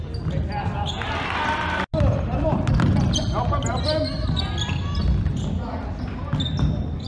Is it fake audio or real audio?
real